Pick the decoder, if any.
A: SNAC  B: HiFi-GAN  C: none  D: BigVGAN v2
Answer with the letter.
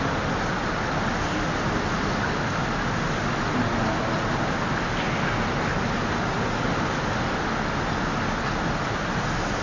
C